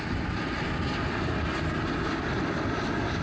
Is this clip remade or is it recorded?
recorded